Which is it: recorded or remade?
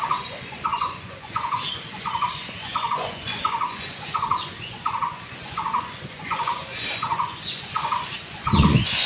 remade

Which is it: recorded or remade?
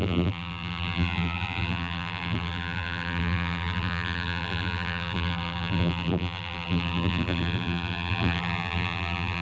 remade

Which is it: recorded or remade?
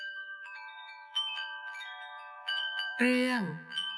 remade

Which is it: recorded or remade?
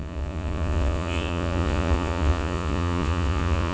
remade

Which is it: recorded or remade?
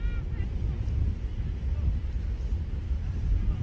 recorded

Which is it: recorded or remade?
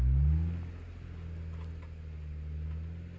recorded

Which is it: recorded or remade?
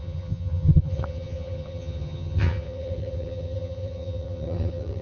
remade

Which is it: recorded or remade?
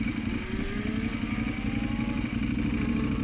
recorded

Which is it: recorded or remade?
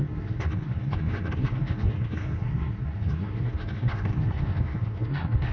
remade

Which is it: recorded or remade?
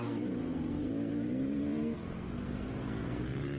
remade